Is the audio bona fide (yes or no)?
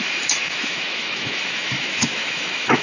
no